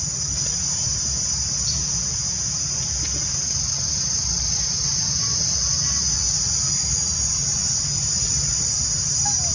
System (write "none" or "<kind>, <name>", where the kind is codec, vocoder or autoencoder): none